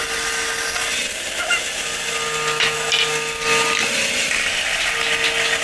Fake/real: real